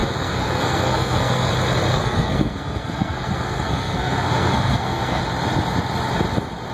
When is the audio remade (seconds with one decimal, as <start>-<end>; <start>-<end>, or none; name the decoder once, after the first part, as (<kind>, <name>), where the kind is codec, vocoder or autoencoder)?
0.0-1.5 (codec, SNAC); 1.9-5.2

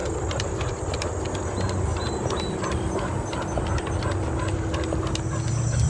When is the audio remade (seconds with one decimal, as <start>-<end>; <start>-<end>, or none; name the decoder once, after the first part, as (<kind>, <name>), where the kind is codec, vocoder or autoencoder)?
none

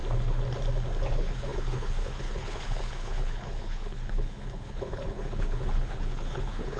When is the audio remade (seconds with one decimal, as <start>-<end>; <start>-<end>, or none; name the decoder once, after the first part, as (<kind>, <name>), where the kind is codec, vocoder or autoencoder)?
1.1-6.8 (codec, HILCodec)

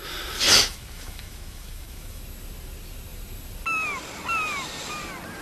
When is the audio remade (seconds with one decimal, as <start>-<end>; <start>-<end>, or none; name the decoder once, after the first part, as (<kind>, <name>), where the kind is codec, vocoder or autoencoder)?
0.6-2.2 (autoencoder, DAC-VAE)

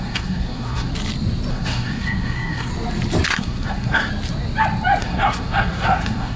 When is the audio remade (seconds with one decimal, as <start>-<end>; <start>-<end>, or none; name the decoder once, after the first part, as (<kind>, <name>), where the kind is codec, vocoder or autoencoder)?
0.0-0.9 (codec, SNAC); 1.5-2.7; 3.3-4.1; 5.0-6.4

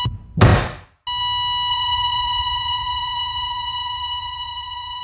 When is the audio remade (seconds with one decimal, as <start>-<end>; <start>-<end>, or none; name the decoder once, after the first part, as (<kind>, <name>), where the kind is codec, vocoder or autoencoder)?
1.7-5.0 (vocoder, Vocos)